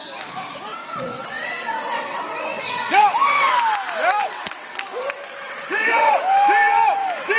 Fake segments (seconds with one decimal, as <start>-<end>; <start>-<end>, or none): 0.8-3.5; 4.2-4.8; 5.4-6.2